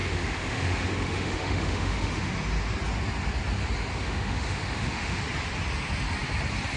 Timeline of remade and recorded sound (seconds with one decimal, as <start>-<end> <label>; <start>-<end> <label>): 0.0-2.3 remade; 2.3-3.9 recorded; 3.9-5.2 remade; 5.2-6.8 recorded